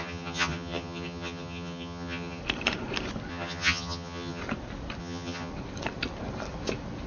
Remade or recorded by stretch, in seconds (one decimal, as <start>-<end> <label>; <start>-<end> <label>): 0.0-2.4 remade; 2.4-3.3 recorded; 3.3-4.4 remade; 4.4-5.0 recorded; 5.0-5.5 remade; 5.5-7.1 recorded